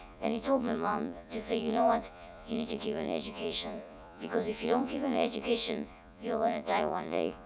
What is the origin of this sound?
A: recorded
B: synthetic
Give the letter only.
B